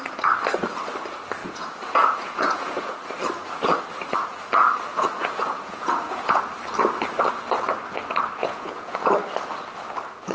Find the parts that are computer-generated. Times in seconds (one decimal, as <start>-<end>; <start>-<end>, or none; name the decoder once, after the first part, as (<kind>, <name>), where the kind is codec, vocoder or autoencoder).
1.4-3.1 (vocoder, Vocos); 4.9-6.4; 8.4-9.1